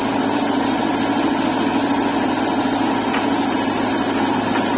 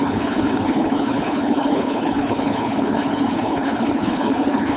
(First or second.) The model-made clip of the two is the second